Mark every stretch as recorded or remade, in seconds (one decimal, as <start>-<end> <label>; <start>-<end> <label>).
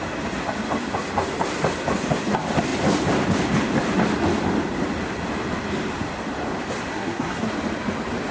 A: 0.0-6.9 recorded; 6.9-7.5 remade; 7.5-8.3 recorded